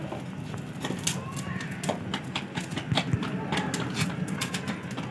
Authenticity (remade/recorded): recorded